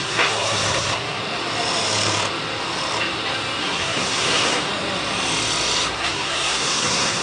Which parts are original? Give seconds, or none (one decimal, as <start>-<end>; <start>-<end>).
1.2-3.6; 4.7-5.9